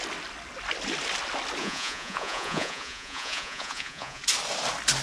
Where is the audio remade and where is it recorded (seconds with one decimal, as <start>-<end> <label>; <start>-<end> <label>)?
0.0-1.6 recorded; 1.6-4.2 remade; 4.2-5.0 recorded